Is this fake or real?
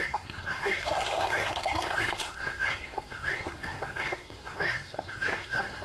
fake